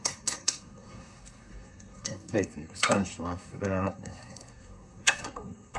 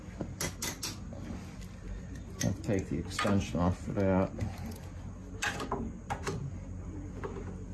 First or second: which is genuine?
second